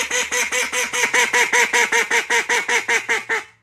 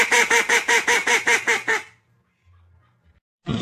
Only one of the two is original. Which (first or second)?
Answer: first